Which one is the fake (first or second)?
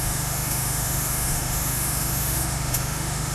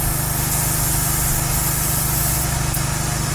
first